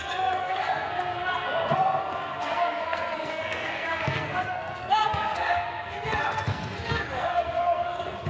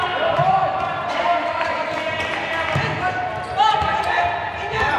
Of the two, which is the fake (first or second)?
first